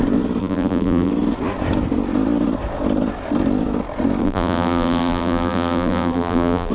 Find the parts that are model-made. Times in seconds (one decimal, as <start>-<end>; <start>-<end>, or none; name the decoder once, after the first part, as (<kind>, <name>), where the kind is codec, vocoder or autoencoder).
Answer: 0.4-1.1 (vocoder, BigVGAN v2); 4.2-6.7